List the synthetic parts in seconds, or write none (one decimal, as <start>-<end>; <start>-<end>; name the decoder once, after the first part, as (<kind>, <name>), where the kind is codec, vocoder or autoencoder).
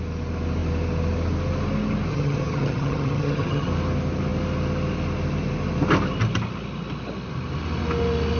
2.1-3.7 (vocoder, HiFi-GAN)